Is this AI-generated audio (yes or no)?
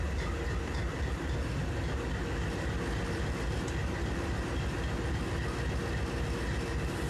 no